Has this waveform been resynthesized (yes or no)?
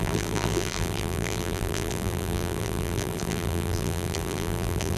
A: yes